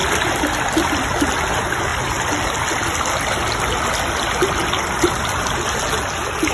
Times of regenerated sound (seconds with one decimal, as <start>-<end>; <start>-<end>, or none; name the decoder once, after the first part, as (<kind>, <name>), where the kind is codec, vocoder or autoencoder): none